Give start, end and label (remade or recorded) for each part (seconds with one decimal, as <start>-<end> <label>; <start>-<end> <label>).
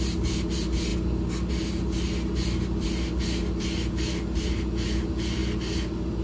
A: 0.0-6.2 recorded